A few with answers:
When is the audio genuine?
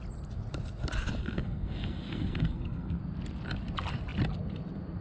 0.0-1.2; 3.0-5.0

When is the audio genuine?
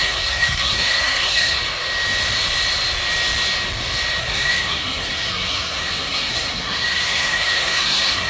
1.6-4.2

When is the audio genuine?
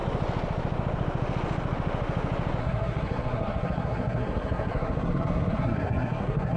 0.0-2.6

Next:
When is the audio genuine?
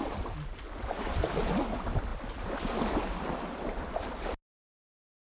0.0-5.4